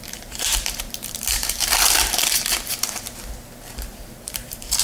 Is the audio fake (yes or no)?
yes